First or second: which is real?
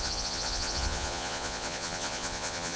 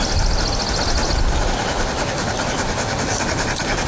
second